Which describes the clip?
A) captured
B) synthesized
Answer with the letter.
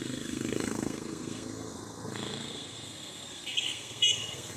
B